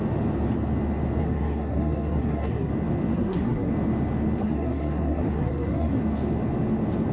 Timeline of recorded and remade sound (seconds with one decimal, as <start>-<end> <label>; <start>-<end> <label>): 0.0-1.2 recorded; 1.2-2.7 remade; 2.7-3.1 recorded; 3.1-3.7 remade; 3.7-4.4 recorded; 4.4-6.0 remade; 6.0-7.1 recorded